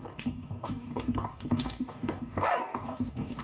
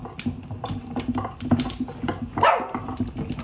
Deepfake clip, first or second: first